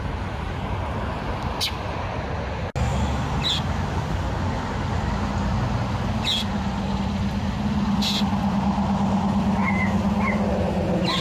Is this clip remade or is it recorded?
recorded